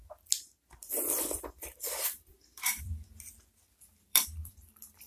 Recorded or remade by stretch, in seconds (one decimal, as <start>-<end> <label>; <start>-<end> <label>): 0.0-0.8 recorded; 0.8-2.9 remade; 2.9-4.1 recorded; 4.1-5.1 remade